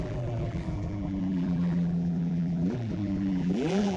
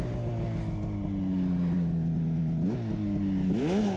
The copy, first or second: first